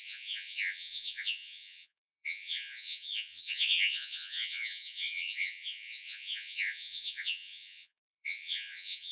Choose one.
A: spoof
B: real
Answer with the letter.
A